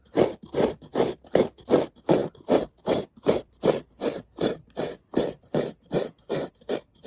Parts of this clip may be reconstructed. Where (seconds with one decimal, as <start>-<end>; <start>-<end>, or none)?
0.0-7.1